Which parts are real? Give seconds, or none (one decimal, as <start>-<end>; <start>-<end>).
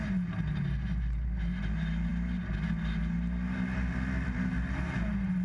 0.0-5.4